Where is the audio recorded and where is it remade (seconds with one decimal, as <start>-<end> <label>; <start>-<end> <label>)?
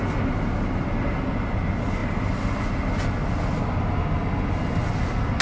0.0-5.4 recorded